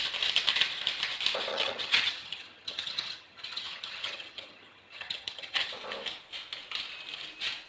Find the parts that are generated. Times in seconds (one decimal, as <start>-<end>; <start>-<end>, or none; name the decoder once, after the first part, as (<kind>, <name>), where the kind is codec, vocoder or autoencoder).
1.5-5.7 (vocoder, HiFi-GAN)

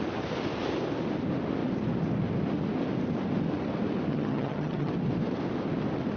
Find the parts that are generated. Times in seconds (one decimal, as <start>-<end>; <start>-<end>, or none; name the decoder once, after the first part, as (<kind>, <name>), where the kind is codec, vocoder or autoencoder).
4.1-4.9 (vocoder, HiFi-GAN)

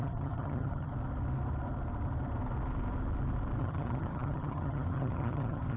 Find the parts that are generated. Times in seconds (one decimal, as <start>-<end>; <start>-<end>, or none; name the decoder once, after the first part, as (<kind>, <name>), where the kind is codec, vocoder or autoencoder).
0.0-0.9 (vocoder, HiFi-GAN); 3.6-5.8

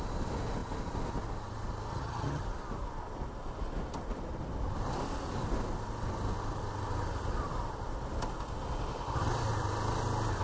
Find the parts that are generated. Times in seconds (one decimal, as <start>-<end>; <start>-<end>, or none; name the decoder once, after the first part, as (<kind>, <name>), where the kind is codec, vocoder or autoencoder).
1.9-2.4 (vocoder, HiFi-GAN)

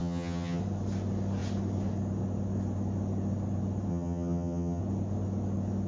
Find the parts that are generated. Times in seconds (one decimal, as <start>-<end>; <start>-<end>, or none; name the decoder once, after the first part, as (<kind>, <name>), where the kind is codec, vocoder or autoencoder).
0.0-0.6 (vocoder, HiFi-GAN); 3.9-4.8